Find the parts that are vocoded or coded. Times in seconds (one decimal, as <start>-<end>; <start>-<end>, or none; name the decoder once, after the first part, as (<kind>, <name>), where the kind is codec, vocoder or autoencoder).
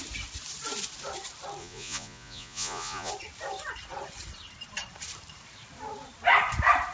1.6-3.1 (vocoder, Vocos)